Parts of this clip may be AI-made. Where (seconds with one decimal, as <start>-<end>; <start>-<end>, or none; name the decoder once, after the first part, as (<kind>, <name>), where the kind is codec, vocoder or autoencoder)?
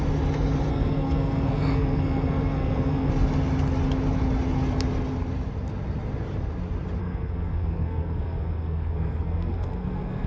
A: 0.7-3.1 (codec, SNAC); 7.0-10.3